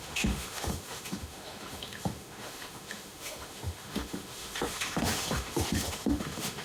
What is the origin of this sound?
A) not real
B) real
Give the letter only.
A